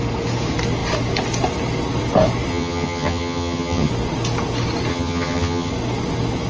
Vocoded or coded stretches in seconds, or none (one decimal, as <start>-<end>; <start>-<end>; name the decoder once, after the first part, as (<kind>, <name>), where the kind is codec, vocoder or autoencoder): 2.5-3.9 (vocoder, HiFi-GAN); 4.9-5.7